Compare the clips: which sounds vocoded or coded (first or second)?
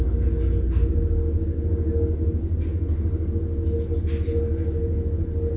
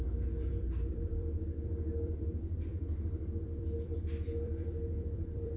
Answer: second